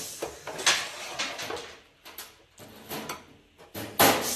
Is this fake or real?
real